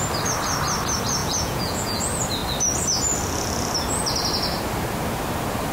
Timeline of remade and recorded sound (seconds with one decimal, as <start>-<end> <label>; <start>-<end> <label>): 0.0-1.2 recorded; 1.2-2.0 remade; 2.0-5.7 recorded